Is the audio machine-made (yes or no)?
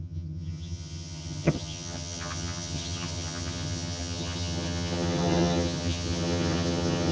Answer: yes